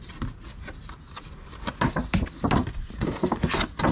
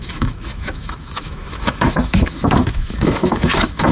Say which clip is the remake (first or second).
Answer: second